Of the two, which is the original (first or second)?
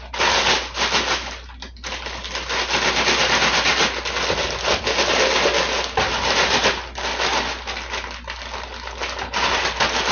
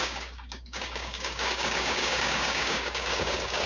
first